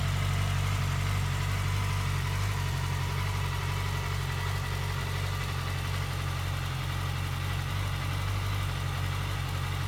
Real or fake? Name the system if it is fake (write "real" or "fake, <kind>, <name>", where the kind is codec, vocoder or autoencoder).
real